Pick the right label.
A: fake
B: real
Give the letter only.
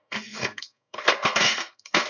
A